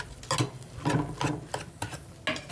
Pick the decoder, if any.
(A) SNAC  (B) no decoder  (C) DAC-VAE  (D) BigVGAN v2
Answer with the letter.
B